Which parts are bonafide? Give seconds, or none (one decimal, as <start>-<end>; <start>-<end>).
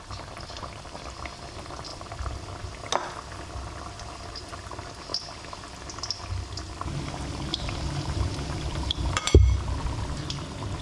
0.0-7.5; 9.3-10.8